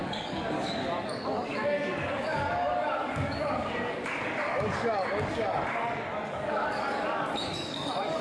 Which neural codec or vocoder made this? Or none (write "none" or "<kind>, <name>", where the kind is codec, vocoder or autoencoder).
codec, DAC